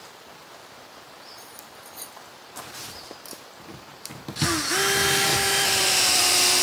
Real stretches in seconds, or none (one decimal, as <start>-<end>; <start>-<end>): 0.0-0.4; 4.2-5.3